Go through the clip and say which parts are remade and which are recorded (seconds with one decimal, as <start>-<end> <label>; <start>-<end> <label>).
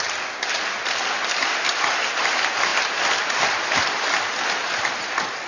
0.0-5.5 recorded